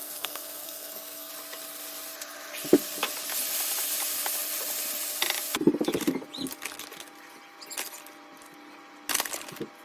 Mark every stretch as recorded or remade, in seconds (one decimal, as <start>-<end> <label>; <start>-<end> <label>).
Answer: 0.0-1.3 remade; 1.3-9.8 recorded